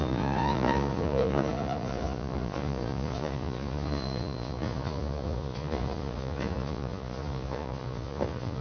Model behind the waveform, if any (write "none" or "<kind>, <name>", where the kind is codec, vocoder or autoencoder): vocoder, Vocos